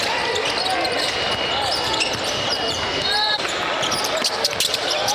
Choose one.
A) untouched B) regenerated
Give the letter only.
A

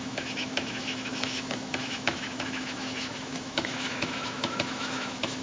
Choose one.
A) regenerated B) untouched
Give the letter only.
A